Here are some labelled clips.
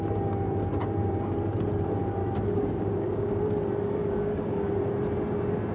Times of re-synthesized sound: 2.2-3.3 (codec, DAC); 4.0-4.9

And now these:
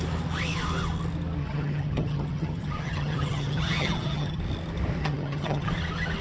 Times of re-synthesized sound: 1.4-4.4 (vocoder, HiFi-GAN); 5.0-5.7

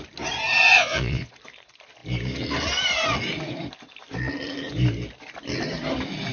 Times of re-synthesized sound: 0.7-1.3 (vocoder, Vocos)

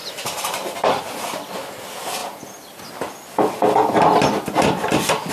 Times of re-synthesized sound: 0.0-1.0 (vocoder, BigVGAN v2)

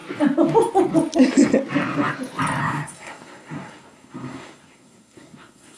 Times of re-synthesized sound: 2.6-5.8 (codec, SNAC)

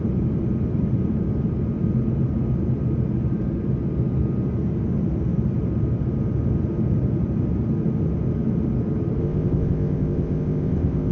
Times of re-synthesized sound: 9.2-11.1 (codec, ZipCodec)